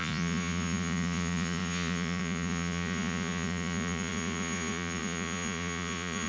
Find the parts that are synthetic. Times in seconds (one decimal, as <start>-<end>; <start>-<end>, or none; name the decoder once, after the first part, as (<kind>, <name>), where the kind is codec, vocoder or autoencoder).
0.0-6.3 (vocoder, Vocos)